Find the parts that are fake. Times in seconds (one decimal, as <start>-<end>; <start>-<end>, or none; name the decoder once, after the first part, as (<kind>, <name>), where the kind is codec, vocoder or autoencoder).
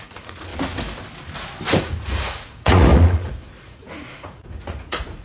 0.0-0.5 (vocoder, Vocos); 1.8-5.2